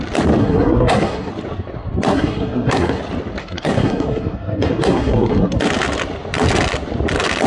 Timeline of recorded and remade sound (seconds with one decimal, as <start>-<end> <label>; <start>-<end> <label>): 0.0-0.4 recorded; 0.4-1.3 remade; 1.3-2.1 recorded; 2.1-3.0 remade; 3.0-3.4 recorded; 3.4-5.6 remade; 5.6-7.5 recorded